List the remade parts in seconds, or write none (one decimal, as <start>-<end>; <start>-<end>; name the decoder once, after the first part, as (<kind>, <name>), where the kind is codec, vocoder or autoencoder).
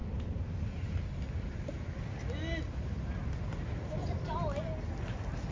none